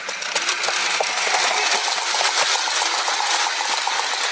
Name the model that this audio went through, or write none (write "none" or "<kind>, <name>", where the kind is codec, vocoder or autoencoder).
none